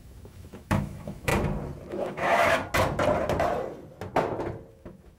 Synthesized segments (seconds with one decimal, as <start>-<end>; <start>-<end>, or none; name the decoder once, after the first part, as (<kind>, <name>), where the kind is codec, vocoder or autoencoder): 0.0-1.3 (autoencoder, DAC-VAE); 1.9-2.6; 4.7-5.2